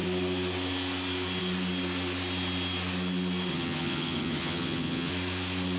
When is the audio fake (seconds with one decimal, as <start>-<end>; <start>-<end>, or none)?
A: 3.5-5.1